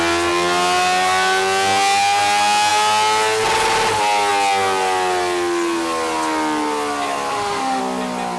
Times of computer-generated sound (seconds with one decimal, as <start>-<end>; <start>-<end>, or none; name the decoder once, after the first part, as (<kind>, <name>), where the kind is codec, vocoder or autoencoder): 7.3-7.8 (autoencoder, DAC-VAE)